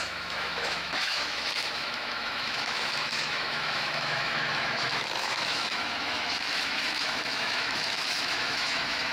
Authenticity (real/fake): fake